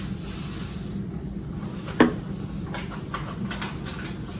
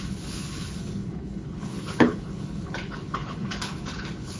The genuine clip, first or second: first